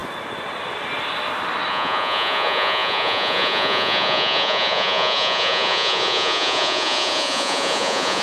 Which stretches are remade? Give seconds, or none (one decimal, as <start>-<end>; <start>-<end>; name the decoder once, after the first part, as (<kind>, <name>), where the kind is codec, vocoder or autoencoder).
1.7-8.2 (vocoder, Vocos)